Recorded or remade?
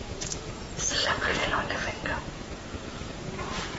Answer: remade